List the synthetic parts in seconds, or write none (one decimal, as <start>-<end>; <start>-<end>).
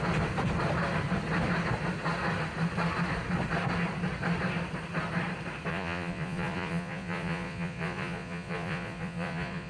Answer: 5.7-9.7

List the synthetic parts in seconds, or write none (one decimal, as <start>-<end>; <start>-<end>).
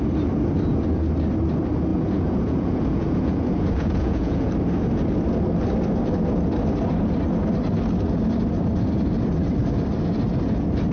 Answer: 1.9-4.5